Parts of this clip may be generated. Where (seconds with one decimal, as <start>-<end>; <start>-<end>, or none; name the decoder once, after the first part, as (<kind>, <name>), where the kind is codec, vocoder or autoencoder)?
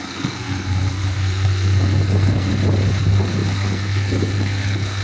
0.0-2.5 (codec, SNAC); 3.0-5.0